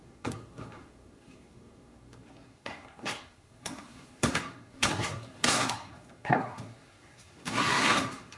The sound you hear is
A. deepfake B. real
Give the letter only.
A